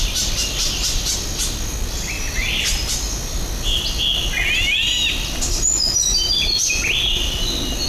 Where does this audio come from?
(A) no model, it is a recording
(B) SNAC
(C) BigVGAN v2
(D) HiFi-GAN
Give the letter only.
A